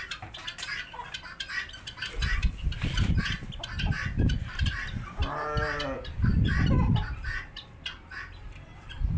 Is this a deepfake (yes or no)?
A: no